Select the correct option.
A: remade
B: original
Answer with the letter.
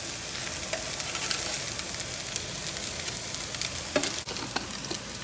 B